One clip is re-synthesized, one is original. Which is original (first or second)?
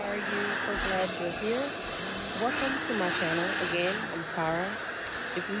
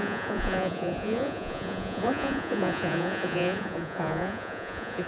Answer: first